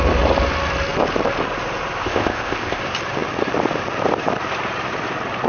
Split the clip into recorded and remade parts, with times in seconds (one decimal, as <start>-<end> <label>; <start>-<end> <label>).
0.0-2.0 recorded; 2.0-2.8 remade; 2.8-5.5 recorded

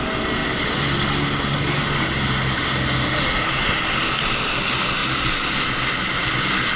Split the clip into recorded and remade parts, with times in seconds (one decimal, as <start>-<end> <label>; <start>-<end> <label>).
0.0-6.8 recorded

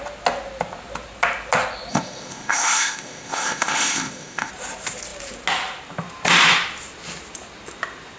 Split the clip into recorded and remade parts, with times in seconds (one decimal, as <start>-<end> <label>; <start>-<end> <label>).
0.0-1.9 recorded; 1.9-4.5 remade; 4.5-8.2 recorded

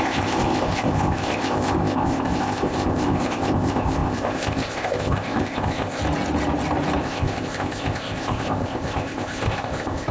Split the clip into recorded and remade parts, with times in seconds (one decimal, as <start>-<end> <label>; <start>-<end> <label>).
0.0-6.0 remade; 6.0-7.0 recorded; 7.0-10.1 remade

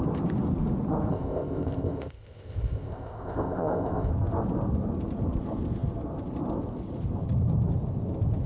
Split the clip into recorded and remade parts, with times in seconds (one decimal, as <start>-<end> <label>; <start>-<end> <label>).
0.0-1.1 recorded; 1.1-4.1 remade; 4.1-8.5 recorded

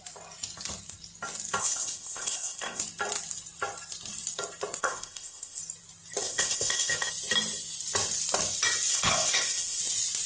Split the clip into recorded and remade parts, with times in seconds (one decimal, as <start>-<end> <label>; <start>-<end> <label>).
0.0-1.6 recorded; 1.6-2.8 remade; 2.8-4.8 recorded; 4.8-5.6 remade; 5.6-6.2 recorded; 6.2-7.1 remade; 7.1-8.9 recorded; 8.9-9.8 remade; 9.8-10.3 recorded

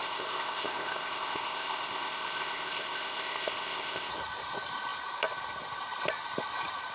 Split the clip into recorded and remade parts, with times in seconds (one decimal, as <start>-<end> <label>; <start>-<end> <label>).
0.0-4.1 remade; 4.1-6.9 recorded